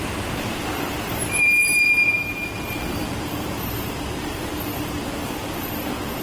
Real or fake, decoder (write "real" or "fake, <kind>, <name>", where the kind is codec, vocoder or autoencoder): fake, vocoder, BigVGAN v2